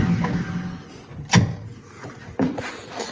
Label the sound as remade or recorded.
recorded